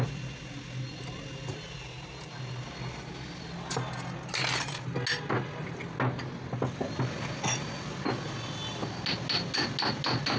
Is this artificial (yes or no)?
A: no